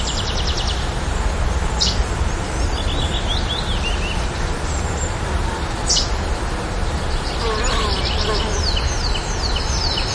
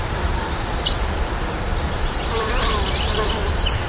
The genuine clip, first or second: first